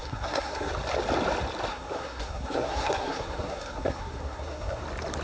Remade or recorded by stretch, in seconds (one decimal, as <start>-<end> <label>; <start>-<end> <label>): 0.0-0.7 remade; 0.7-1.7 recorded; 1.7-4.8 remade; 4.8-5.2 recorded